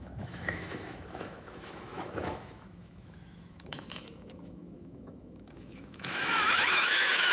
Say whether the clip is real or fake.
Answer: fake